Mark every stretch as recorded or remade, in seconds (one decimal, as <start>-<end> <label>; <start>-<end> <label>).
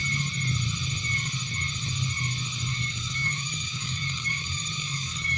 0.0-2.7 recorded; 2.7-5.4 remade